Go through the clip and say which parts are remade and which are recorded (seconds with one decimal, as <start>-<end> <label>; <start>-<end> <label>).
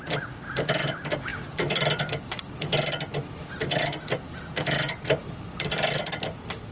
0.0-6.7 recorded